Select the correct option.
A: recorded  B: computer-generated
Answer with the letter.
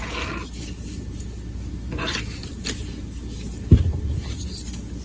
A